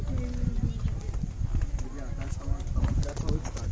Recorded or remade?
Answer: recorded